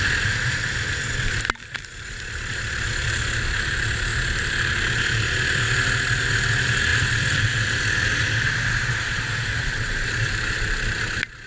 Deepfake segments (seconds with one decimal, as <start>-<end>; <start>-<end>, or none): 1.6-2.6; 6.9-7.5